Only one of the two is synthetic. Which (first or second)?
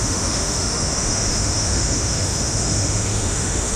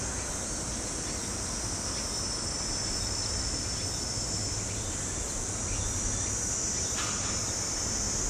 first